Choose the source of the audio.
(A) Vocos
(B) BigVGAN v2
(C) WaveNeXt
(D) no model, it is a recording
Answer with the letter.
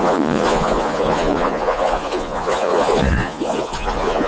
A